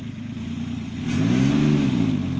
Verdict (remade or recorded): recorded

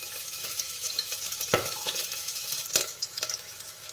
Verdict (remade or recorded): remade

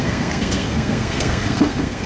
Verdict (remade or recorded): remade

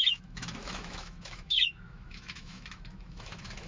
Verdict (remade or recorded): remade